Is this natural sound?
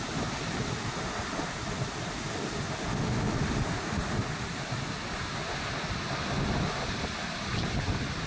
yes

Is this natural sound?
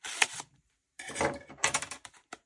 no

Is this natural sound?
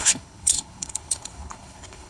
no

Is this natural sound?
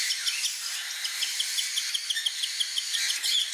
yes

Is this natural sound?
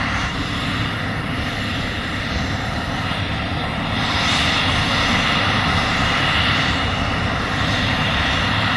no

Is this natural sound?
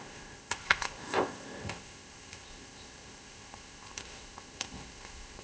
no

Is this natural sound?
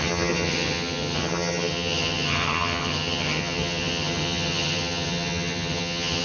no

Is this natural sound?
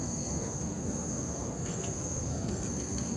no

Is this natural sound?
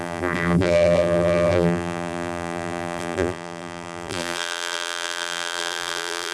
no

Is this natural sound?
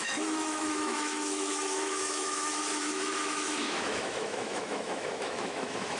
no